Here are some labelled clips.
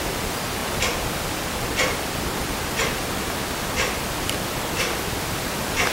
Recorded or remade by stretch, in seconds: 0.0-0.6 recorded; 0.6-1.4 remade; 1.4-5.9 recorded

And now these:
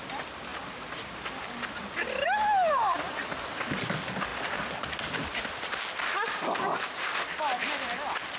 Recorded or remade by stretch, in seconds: 0.0-8.4 recorded

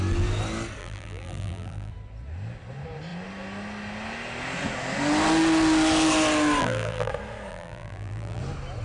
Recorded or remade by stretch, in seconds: 0.0-0.8 recorded; 0.8-1.9 remade; 1.9-6.6 recorded; 6.6-7.1 remade; 7.1-7.5 recorded; 7.5-8.4 remade; 8.4-8.8 recorded

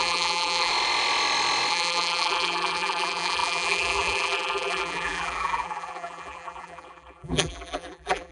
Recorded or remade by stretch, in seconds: 0.0-0.7 remade; 0.7-1.7 recorded; 1.7-8.3 remade

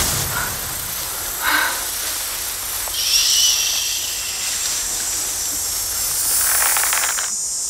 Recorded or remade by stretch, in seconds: 0.0-7.7 recorded

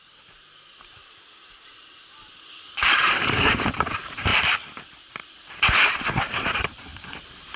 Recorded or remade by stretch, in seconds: 0.0-7.6 remade

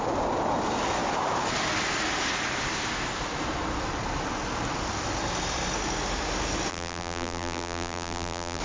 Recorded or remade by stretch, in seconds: 0.0-6.7 recorded; 6.7-8.6 remade